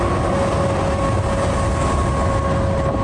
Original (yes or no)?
yes